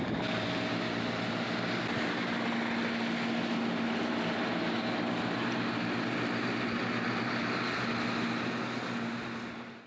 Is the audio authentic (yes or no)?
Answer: yes